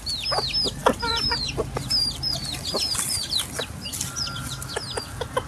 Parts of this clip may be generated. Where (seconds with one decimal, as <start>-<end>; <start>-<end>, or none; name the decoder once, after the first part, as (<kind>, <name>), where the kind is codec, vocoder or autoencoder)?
none